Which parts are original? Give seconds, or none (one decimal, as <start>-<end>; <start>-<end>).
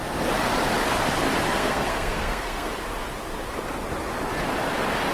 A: 0.0-1.5; 2.7-5.1